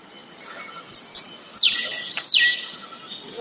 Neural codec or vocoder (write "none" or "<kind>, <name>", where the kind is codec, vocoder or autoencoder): none